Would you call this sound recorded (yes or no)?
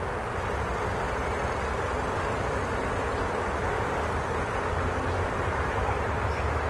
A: yes